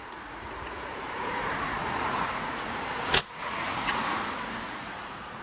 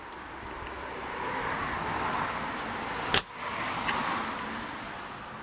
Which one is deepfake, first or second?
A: first